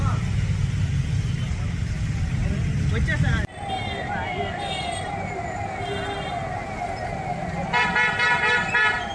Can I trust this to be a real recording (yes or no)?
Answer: yes